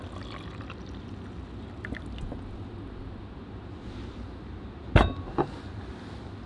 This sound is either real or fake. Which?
real